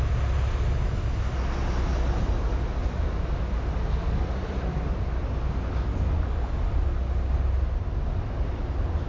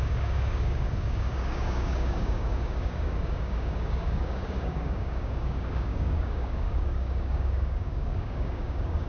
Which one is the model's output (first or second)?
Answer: second